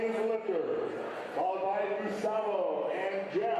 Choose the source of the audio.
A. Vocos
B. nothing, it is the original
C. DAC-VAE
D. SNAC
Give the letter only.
B